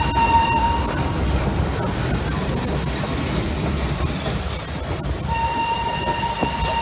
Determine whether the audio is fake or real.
real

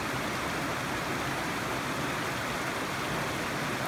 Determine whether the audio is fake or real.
real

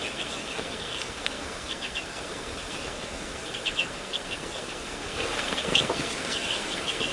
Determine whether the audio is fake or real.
fake